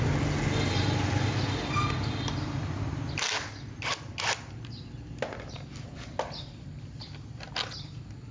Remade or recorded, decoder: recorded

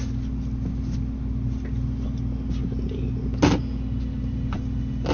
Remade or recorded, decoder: recorded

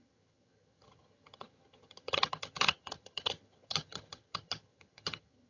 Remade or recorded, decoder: remade, vocoder, HiFi-GAN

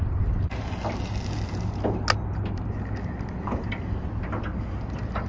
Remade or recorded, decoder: recorded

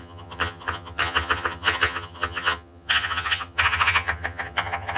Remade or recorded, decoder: remade, vocoder, HiFi-GAN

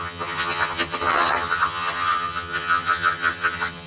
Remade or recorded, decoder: remade, vocoder, HiFi-GAN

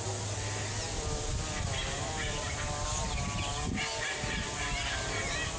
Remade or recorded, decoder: recorded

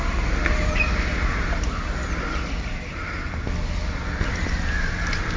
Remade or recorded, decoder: recorded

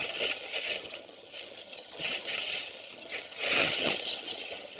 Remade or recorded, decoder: remade, vocoder, HiFi-GAN